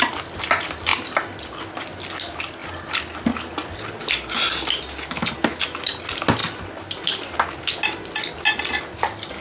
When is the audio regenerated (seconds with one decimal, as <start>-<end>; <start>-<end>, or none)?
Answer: none

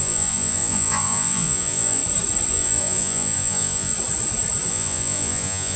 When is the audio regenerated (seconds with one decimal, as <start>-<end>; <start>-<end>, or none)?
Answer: 0.0-2.0; 2.5-3.9; 4.7-5.8

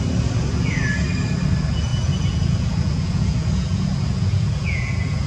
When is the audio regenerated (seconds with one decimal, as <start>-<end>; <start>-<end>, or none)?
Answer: 1.9-5.3

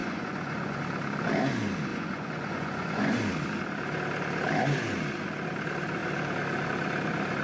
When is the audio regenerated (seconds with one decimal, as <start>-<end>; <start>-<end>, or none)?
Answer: 0.0-0.8; 1.9-3.1